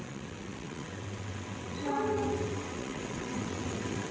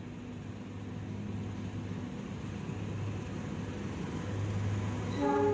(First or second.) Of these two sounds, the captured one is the second